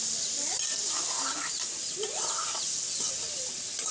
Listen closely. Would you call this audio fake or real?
real